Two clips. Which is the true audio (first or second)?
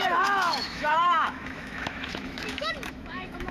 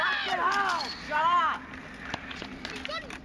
second